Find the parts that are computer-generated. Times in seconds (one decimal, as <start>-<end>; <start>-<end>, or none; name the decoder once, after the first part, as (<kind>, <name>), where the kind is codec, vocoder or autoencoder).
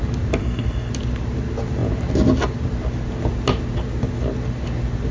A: 0.4-0.9 (codec, SNAC)